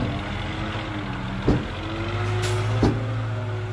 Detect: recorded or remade recorded